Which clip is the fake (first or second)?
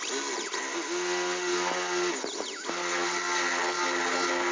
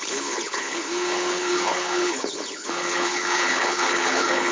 second